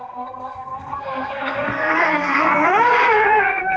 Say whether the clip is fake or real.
fake